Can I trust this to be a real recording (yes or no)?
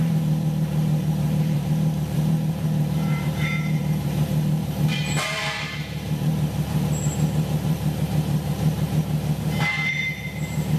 no